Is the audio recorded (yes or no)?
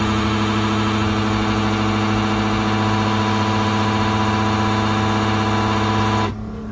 yes